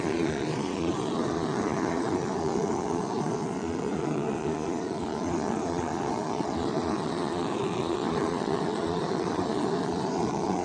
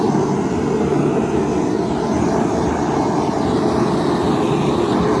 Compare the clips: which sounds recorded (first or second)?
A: second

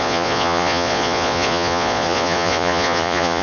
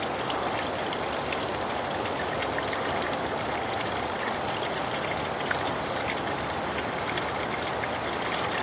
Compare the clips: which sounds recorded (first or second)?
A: second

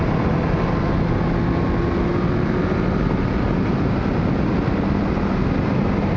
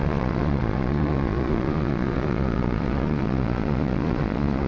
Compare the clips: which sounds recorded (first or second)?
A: first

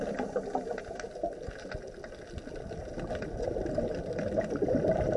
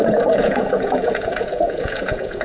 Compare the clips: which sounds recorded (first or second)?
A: first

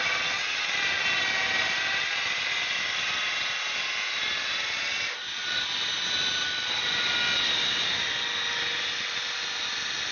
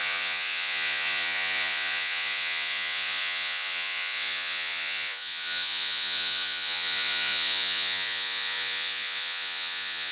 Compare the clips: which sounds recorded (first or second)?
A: first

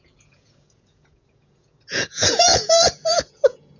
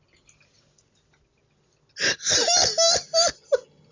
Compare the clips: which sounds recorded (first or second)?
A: second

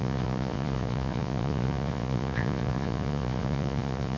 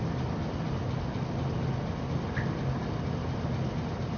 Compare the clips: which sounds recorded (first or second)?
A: second